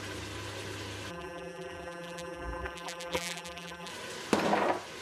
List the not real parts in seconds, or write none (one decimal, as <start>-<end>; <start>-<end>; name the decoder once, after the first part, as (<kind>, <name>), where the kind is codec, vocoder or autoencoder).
1.1-3.9 (vocoder, BigVGAN v2)

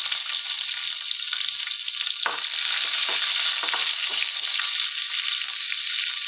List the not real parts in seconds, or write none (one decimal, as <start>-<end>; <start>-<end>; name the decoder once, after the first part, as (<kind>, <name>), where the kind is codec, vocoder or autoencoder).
none

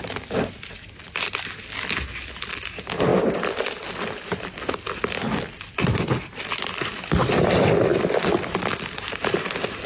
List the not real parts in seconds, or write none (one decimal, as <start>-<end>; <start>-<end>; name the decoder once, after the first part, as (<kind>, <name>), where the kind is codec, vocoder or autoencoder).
7.9-9.5 (vocoder, BigVGAN v2)

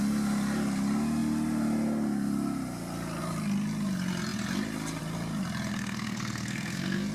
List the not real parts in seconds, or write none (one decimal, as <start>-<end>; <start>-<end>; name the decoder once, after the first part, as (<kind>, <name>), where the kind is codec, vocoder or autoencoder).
5.7-7.1 (codec, SNAC)